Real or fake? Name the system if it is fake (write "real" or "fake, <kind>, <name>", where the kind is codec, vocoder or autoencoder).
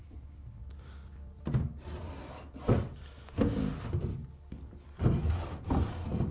real